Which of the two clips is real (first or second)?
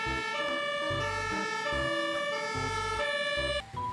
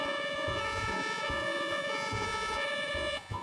first